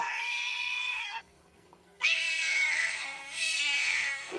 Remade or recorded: remade